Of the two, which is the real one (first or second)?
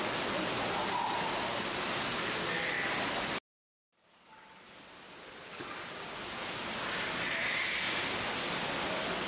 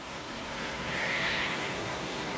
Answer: first